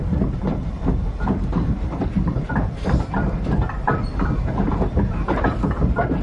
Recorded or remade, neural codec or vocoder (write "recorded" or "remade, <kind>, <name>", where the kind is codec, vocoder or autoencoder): recorded